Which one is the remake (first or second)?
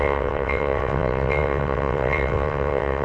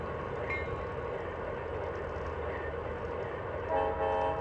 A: first